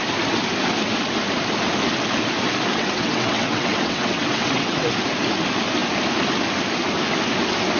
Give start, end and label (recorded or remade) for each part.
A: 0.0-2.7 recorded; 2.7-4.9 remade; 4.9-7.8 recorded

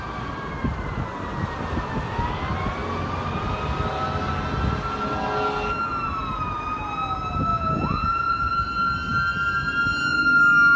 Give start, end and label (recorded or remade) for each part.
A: 0.0-7.5 recorded; 7.5-8.5 remade; 8.5-10.8 recorded